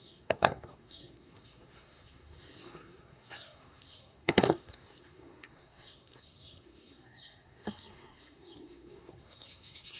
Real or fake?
fake